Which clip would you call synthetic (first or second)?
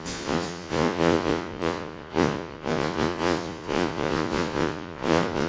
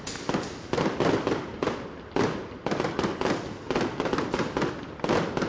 first